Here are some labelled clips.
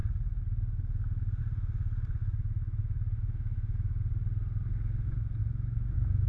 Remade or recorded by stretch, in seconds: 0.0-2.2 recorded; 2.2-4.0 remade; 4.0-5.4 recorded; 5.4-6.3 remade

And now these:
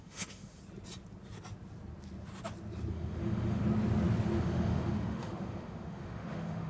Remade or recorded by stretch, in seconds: 0.0-0.6 remade; 0.6-2.9 recorded; 2.9-3.6 remade; 3.6-4.4 recorded; 4.4-6.7 remade

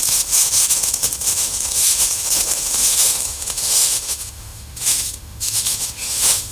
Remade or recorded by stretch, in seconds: 0.0-6.5 remade

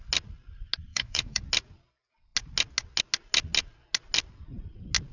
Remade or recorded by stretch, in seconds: 0.0-0.9 recorded; 0.9-1.4 remade; 1.4-5.1 recorded

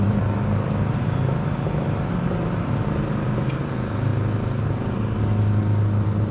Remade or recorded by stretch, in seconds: 0.0-6.3 recorded

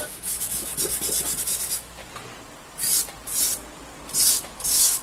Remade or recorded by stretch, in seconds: 0.0-0.7 remade; 0.7-1.4 recorded; 1.4-2.0 remade; 2.0-4.3 recorded; 4.3-5.0 remade